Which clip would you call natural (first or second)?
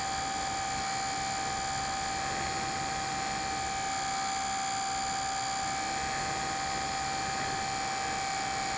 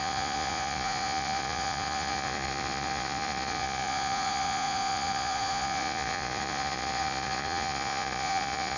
first